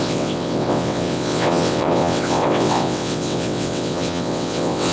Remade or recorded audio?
remade